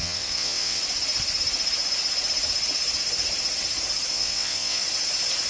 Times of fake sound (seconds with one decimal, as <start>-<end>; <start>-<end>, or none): 0.0-0.8; 4.1-4.8